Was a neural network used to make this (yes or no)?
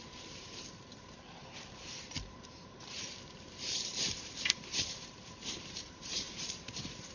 yes